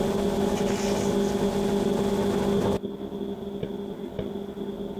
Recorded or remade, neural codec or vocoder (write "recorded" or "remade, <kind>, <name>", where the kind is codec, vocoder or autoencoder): recorded